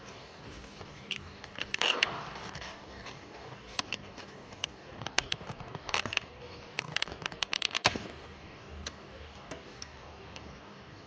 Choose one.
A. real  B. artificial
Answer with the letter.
B